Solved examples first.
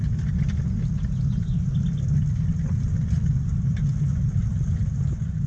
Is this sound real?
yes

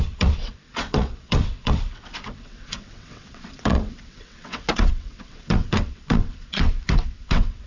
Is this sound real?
no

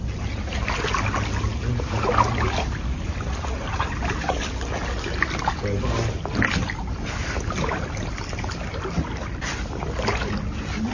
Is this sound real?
yes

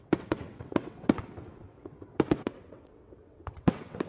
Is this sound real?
no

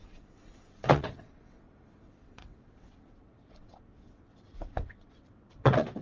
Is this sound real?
no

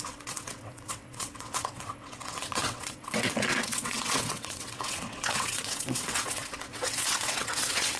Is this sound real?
no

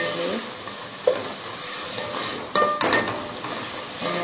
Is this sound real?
yes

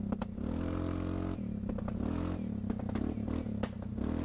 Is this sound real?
yes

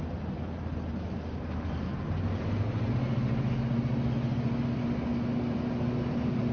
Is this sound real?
yes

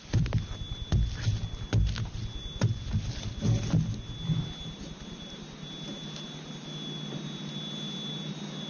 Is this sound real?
yes